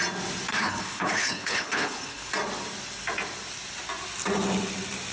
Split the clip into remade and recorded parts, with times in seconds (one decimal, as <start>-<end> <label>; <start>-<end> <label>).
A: 0.0-0.5 recorded; 0.5-2.3 remade; 2.3-5.1 recorded